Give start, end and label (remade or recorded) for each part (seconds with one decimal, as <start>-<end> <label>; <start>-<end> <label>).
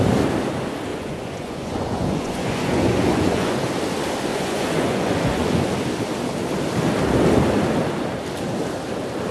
0.0-0.9 recorded; 0.9-3.6 remade; 3.6-4.3 recorded; 4.3-5.7 remade; 5.7-9.3 recorded